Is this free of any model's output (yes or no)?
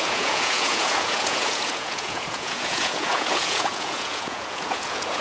no